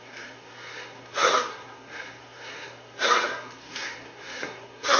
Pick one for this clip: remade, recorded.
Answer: remade